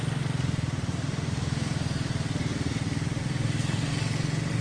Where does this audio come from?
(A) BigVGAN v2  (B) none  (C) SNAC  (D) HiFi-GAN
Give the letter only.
B